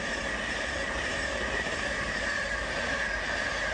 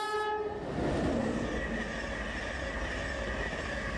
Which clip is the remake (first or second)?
first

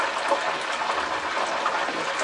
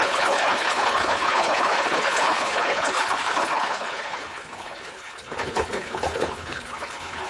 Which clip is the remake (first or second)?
second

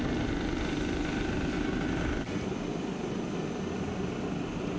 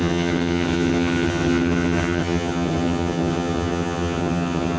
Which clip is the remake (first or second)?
second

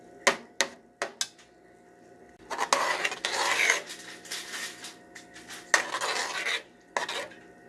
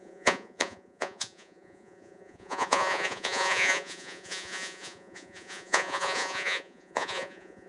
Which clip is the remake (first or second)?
second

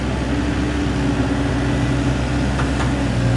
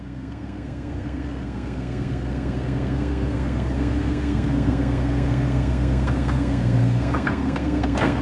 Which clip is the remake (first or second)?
second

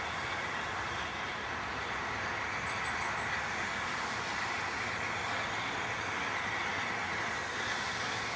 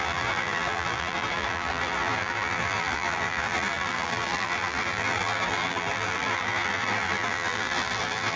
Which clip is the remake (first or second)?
second